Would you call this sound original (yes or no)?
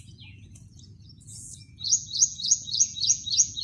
no